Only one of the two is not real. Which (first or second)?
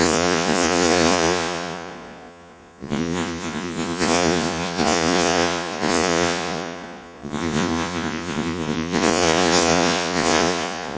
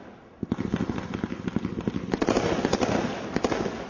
first